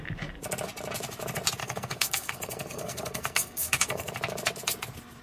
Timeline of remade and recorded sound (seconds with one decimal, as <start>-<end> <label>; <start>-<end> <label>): 0.0-1.6 recorded; 1.6-4.1 remade; 4.1-5.2 recorded